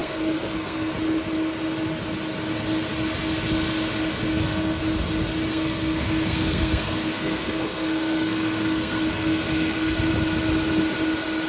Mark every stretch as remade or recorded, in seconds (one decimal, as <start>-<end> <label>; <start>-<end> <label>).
0.0-0.9 remade; 0.9-4.3 recorded; 4.3-4.8 remade; 4.8-5.5 recorded; 5.5-10.1 remade; 10.1-11.5 recorded